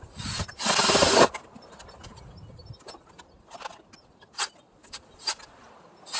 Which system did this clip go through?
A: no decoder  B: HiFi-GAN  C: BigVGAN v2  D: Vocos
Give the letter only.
A